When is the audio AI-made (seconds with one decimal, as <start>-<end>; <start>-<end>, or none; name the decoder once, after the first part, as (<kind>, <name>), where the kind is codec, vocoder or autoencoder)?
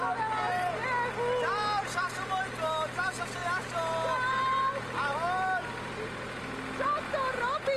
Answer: none